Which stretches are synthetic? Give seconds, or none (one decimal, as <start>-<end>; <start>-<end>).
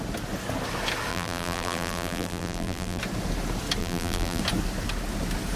1.1-3.0; 3.8-4.4